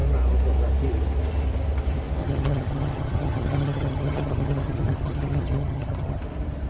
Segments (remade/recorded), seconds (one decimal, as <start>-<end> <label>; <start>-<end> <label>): 0.0-2.2 recorded; 2.2-6.2 remade; 6.2-6.7 recorded